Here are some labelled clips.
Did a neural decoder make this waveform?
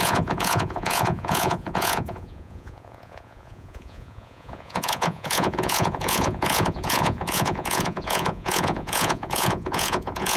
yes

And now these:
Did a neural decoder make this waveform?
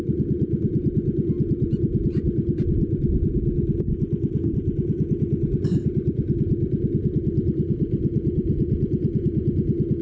no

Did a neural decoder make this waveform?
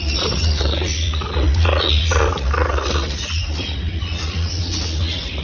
yes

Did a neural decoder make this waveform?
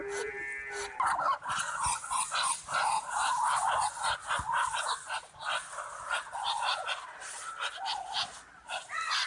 no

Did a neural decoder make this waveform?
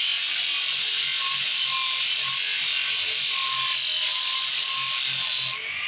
no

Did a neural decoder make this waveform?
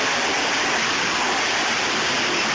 no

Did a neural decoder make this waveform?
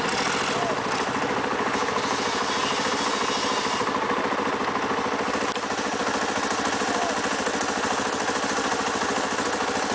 no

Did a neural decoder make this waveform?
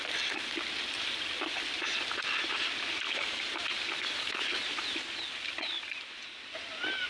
no